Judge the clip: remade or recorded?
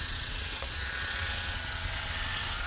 remade